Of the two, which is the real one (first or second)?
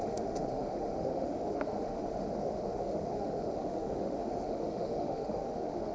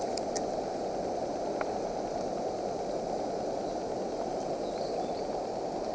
second